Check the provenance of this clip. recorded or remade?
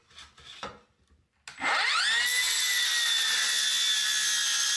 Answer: recorded